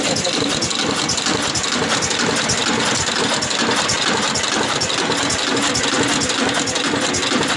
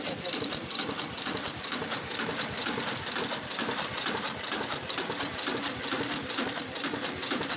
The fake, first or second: second